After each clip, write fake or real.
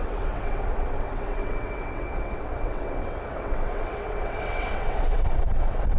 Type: fake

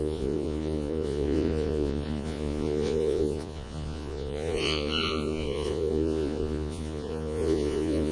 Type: fake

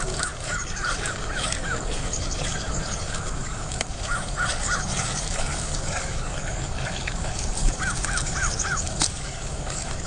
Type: fake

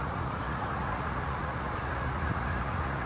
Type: fake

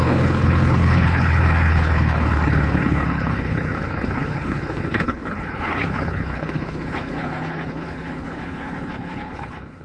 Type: fake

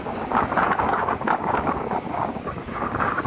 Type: fake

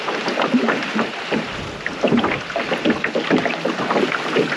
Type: real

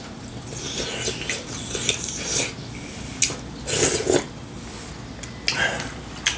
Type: real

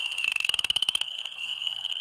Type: fake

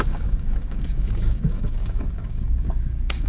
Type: fake